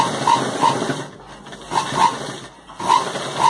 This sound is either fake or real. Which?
real